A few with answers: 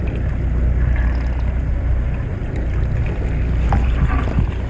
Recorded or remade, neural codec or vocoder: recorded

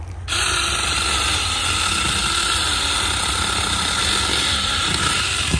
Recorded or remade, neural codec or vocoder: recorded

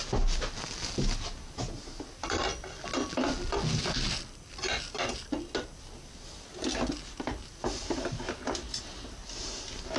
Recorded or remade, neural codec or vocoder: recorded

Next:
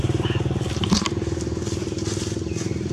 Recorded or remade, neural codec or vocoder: remade, vocoder, BigVGAN v2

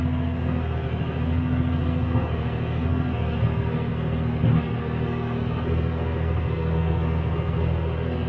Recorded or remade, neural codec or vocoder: remade, codec, SNAC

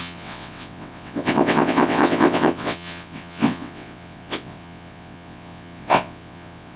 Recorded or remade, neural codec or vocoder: remade, vocoder, WaveNeXt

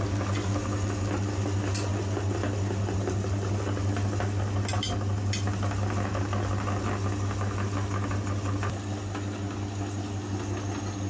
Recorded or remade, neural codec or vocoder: recorded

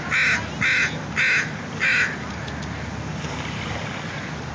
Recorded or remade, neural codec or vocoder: recorded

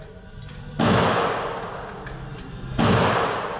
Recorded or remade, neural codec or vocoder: recorded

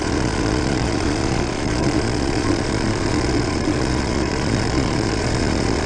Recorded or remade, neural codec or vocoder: remade, vocoder, Vocos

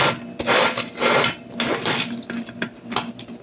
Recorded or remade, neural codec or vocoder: recorded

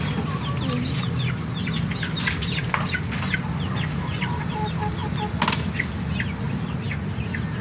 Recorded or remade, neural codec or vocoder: recorded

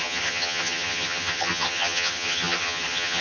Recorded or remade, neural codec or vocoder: remade, vocoder, HiFi-GAN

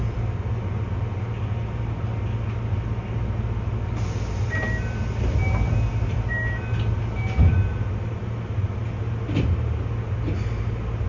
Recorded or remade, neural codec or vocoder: recorded